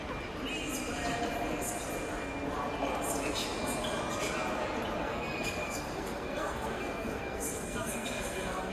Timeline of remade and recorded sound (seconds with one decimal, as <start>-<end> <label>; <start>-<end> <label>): 0.0-5.0 recorded; 5.0-8.7 remade